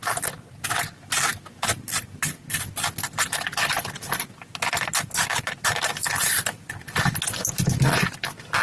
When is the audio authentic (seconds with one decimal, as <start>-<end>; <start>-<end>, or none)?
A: 0.0-8.6